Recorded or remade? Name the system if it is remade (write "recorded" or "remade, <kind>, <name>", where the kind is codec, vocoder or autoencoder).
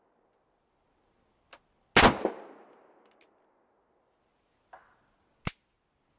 recorded